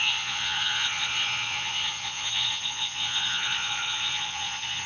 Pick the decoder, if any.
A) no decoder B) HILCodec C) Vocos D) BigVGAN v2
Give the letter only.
C